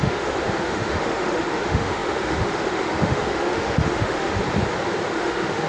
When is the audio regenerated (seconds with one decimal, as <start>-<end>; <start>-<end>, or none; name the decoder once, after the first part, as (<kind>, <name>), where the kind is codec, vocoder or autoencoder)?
0.0-4.4 (autoencoder, DAC-VAE); 5.1-5.7